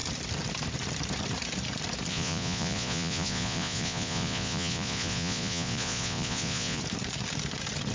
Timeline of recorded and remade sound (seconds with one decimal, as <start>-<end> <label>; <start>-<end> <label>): 0.0-2.1 recorded; 2.1-6.8 remade; 6.8-7.9 recorded